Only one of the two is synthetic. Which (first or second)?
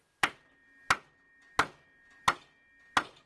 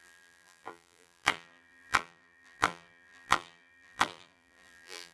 second